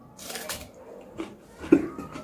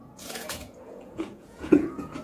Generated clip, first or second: second